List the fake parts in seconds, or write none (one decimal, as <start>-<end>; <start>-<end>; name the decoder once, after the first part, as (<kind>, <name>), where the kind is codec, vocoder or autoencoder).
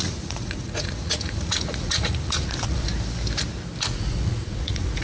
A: 0.0-2.9 (vocoder, Vocos); 3.9-5.0